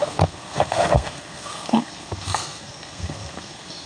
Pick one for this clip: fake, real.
fake